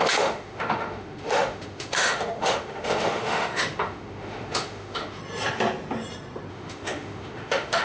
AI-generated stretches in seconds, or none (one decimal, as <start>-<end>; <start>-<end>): 0.0-5.2; 6.5-7.8